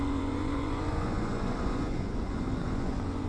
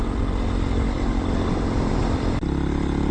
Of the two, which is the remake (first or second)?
first